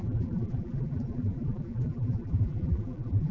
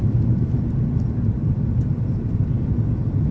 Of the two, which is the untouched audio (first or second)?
second